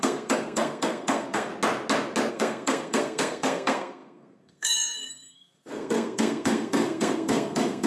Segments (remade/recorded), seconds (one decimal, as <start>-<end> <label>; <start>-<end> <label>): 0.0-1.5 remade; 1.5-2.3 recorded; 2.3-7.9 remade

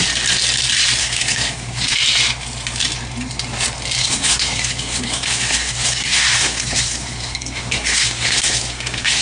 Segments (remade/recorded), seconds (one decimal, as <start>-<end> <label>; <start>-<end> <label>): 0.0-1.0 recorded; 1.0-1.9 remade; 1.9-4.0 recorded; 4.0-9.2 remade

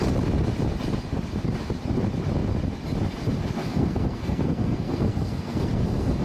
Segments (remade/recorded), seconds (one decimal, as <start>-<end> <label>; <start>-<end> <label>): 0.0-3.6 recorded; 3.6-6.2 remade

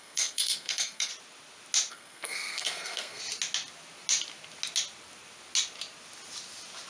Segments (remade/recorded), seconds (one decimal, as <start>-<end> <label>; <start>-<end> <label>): 0.0-1.1 remade; 1.1-1.9 recorded; 1.9-3.2 remade; 3.2-6.9 recorded

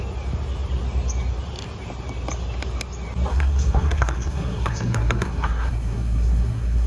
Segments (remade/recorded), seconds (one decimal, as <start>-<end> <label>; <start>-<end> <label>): 0.0-3.3 recorded; 3.3-6.9 remade

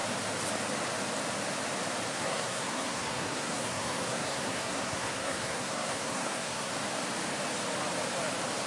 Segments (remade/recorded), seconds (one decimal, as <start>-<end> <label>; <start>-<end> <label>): 0.0-2.1 recorded; 2.1-6.7 remade; 6.7-8.7 recorded

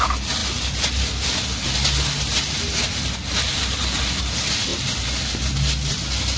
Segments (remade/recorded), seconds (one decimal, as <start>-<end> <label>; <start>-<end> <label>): 0.0-6.4 recorded